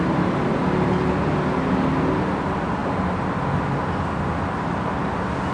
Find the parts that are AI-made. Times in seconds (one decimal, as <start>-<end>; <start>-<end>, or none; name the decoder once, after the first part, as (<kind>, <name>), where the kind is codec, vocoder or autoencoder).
none